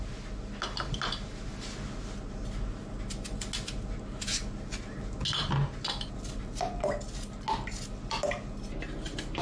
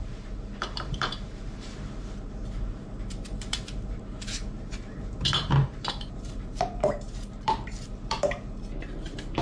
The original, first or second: first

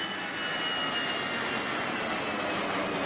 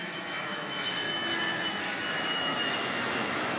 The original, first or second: first